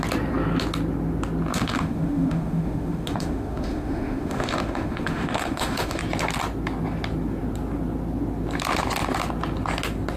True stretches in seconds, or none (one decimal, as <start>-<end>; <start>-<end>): 0.0-1.5; 6.0-10.2